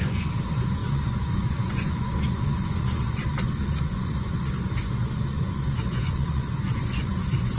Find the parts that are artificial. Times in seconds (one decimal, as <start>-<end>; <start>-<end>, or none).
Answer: 0.0-7.6